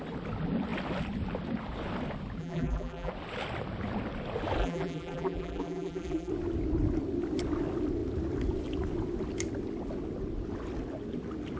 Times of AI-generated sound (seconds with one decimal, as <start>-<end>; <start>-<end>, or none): 2.4-3.1; 4.6-6.3